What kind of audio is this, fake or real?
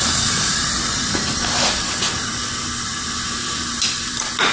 fake